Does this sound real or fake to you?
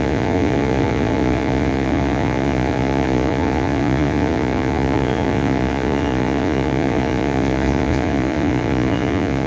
fake